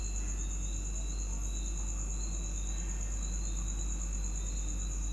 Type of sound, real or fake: real